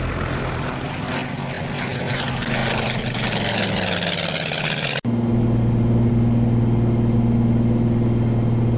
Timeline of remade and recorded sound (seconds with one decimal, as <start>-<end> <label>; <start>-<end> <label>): 0.0-8.8 recorded